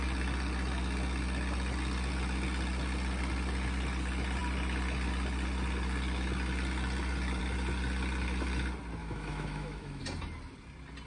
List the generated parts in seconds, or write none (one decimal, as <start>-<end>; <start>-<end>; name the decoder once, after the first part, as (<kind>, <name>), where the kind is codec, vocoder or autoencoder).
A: 9.0-10.0 (autoencoder, DAC-VAE)